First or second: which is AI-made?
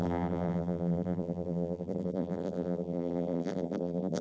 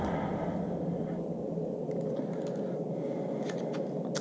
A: first